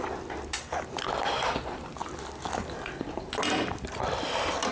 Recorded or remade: recorded